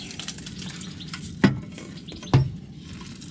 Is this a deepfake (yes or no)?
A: no